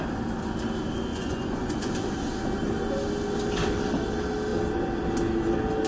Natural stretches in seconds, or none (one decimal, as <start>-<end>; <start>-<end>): 0.0-1.1; 1.9-5.9